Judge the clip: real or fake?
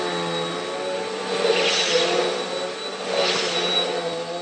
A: real